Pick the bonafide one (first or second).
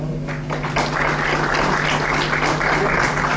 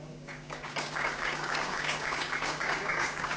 first